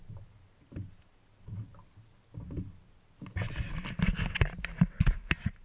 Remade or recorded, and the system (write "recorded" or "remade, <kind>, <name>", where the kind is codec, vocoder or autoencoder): recorded